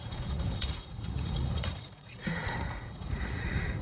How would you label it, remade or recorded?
remade